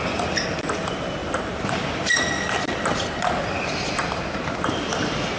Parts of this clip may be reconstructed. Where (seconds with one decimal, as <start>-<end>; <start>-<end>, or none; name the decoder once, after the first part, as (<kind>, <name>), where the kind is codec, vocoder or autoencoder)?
none